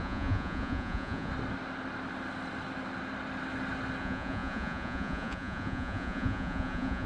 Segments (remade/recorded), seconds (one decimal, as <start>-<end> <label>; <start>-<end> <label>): 0.0-1.3 remade; 1.3-4.0 recorded; 4.0-7.1 remade